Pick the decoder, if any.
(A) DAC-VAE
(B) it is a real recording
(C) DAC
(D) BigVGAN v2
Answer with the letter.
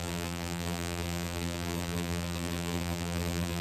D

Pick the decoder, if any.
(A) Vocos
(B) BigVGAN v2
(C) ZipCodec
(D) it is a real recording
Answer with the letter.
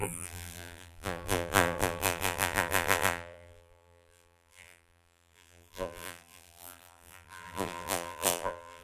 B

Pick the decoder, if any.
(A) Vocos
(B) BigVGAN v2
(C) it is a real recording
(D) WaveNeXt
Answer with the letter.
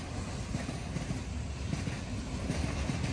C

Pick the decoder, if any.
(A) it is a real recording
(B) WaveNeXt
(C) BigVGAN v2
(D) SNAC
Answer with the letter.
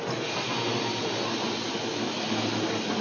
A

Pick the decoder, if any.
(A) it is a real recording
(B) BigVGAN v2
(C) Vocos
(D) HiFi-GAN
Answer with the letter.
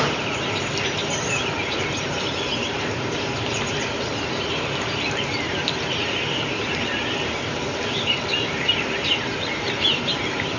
B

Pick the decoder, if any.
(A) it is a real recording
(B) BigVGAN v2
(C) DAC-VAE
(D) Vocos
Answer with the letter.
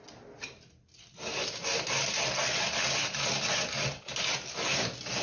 A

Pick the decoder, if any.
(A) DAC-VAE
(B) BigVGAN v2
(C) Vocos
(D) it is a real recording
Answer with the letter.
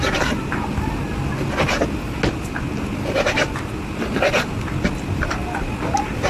D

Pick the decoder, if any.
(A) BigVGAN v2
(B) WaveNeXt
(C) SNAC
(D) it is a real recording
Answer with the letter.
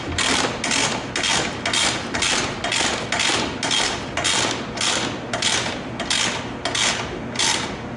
D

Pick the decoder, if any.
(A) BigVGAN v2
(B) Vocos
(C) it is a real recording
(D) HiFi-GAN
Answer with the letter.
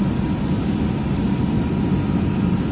C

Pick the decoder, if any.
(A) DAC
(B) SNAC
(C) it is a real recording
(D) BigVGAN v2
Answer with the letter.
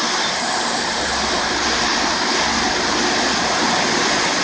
C